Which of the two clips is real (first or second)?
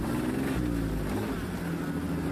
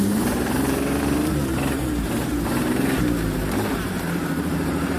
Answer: first